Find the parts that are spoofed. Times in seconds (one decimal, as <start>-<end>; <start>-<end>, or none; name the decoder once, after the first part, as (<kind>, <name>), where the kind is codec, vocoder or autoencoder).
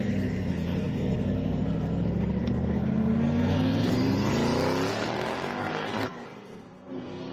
0.0-4.3 (codec, SNAC); 4.9-7.3